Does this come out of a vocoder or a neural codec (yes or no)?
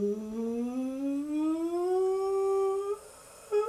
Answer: no